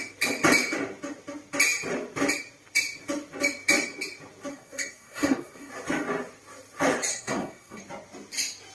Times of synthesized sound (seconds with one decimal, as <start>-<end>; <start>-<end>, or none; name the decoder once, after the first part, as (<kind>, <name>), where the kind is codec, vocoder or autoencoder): 4.5-5.7 (codec, SNAC); 7.1-7.8